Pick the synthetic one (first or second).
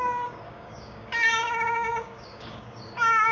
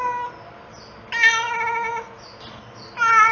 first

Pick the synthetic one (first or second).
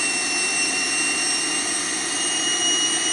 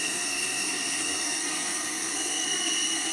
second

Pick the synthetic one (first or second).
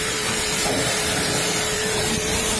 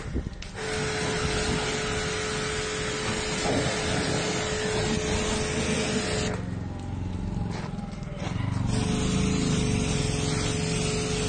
first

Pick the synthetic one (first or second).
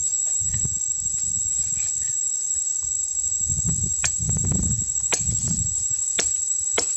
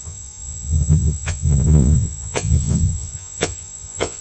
second